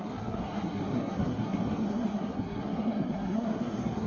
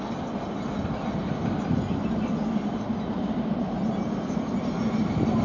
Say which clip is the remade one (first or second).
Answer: first